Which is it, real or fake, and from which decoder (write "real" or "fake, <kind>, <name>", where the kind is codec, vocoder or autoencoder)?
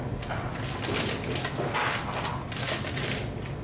real